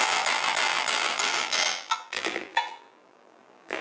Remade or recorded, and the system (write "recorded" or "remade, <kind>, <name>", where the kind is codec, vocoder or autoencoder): remade, vocoder, BigVGAN v2